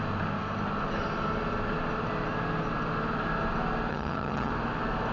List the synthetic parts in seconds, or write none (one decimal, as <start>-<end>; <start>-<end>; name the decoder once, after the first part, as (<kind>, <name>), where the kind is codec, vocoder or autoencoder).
3.9-4.5 (vocoder, HiFi-GAN)